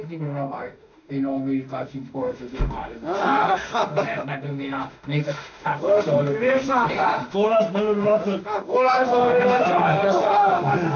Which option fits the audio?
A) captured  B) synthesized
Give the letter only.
B